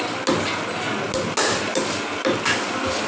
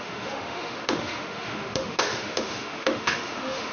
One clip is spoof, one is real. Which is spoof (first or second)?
second